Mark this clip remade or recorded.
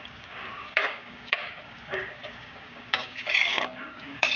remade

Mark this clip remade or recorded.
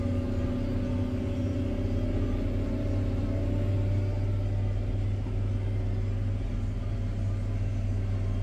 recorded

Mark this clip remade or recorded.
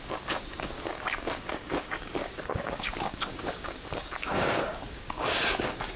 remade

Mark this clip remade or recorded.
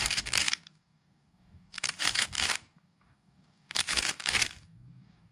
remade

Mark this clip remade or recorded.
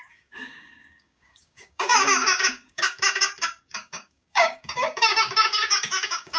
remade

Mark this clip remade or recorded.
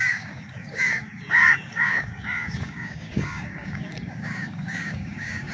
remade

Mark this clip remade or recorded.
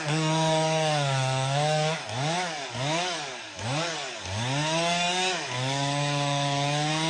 remade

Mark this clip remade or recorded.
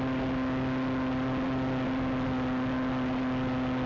recorded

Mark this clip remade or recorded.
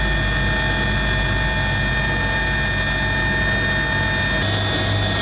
recorded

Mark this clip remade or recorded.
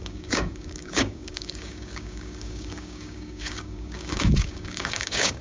remade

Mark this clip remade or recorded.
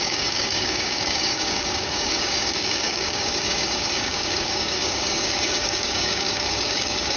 remade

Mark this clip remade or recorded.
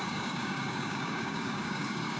remade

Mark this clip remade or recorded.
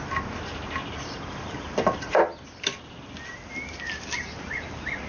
recorded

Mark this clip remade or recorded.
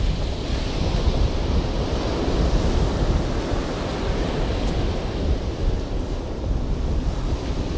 recorded